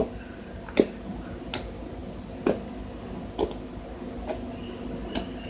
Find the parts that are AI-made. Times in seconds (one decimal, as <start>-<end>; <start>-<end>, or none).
none